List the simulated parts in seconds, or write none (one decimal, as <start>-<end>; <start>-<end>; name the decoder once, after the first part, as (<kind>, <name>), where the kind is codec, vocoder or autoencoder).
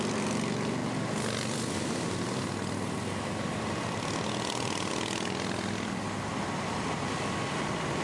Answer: none